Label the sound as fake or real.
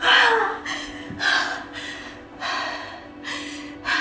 real